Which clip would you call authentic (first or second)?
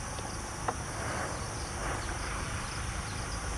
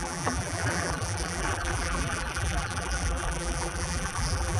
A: first